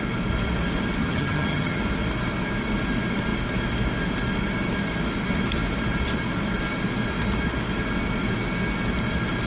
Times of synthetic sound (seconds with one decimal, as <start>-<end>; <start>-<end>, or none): 1.0-1.8